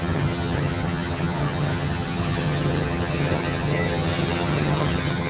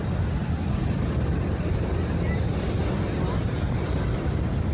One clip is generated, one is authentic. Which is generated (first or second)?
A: first